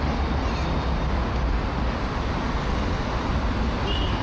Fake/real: real